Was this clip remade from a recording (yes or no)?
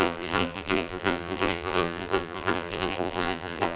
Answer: yes